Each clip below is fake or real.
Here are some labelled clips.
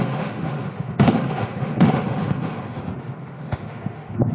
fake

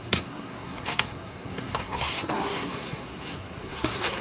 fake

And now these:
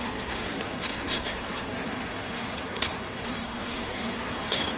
fake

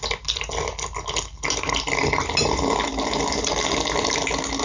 real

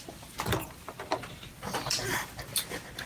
real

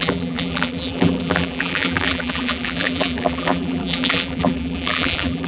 fake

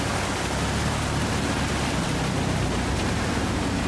real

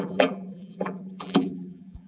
fake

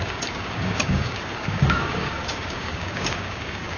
fake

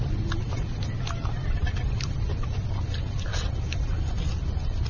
real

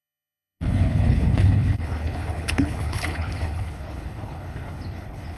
fake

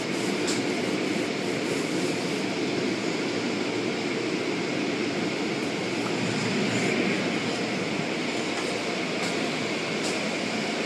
real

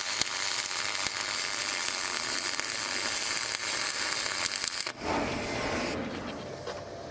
real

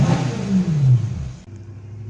real